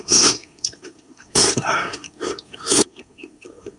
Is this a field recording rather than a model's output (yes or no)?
no